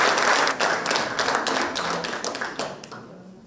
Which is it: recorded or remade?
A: recorded